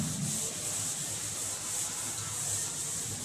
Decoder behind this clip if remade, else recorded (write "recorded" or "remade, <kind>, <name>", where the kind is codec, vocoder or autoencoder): recorded